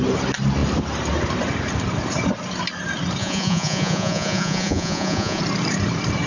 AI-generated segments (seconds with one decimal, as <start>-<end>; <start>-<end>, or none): 3.2-5.4